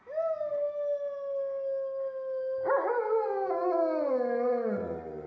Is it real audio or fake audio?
real